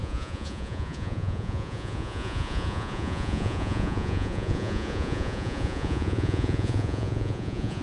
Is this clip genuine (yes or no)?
no